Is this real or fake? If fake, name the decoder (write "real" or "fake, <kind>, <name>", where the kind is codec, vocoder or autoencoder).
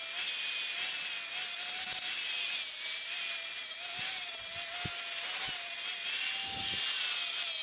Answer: real